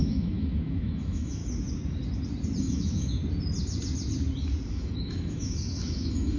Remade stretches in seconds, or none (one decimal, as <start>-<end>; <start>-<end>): 0.0-1.4; 2.6-3.2; 4.7-6.4